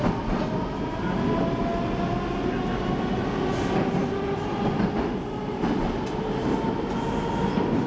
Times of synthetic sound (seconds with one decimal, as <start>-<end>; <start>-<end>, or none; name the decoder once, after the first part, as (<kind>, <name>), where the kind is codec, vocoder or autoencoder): none